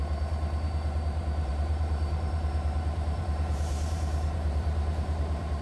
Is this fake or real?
fake